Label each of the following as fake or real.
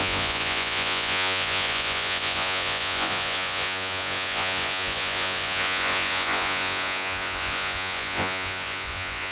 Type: fake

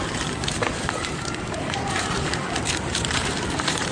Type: fake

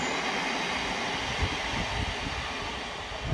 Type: real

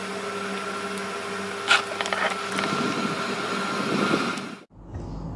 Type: real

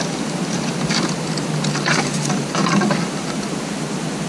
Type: real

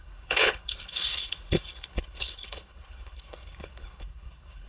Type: fake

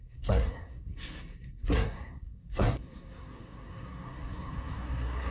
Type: fake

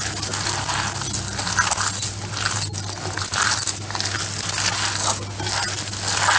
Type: real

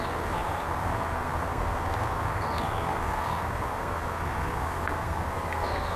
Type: fake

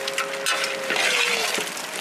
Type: real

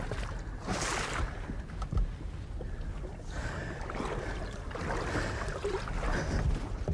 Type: real